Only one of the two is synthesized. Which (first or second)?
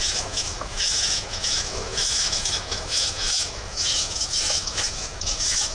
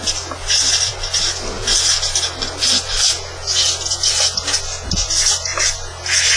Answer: first